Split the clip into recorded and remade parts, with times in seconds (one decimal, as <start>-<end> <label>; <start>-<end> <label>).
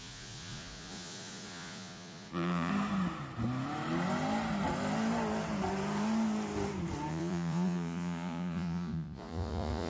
0.0-2.7 remade; 2.7-7.1 recorded; 7.1-9.9 remade